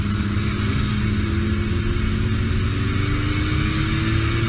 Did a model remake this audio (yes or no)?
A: no